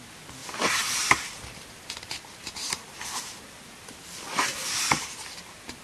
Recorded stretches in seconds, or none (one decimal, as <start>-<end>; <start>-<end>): none